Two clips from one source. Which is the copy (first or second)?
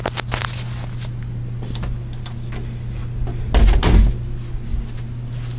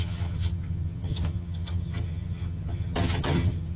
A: second